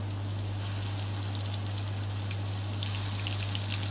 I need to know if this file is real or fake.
real